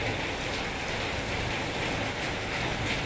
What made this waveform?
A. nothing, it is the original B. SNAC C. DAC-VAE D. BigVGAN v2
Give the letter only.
A